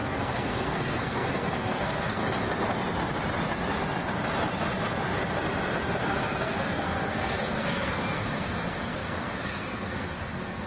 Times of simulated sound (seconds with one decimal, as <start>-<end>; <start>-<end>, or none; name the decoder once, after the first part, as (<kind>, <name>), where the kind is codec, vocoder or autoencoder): 0.0-2.2 (codec, SNAC); 6.0-10.7